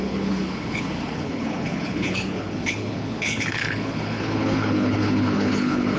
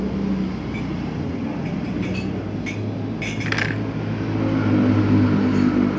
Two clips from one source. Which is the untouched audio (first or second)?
second